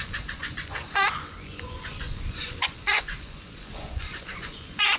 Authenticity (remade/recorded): remade